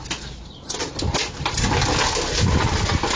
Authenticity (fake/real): real